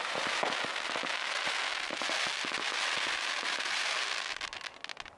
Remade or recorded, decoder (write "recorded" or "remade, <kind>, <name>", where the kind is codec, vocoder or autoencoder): recorded